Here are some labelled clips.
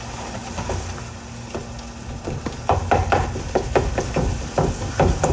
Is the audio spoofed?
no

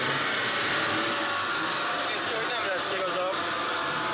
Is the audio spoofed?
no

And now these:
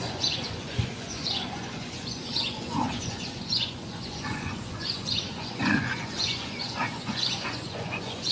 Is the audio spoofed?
yes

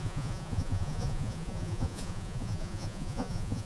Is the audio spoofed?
yes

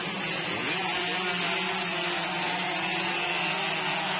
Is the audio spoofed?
no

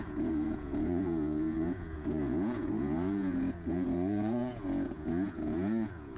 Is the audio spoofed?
yes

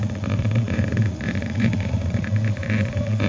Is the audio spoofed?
yes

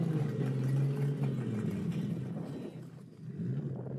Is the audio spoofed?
no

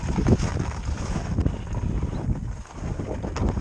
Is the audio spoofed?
no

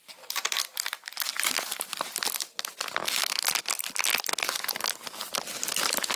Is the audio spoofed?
no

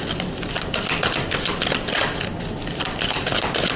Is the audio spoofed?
no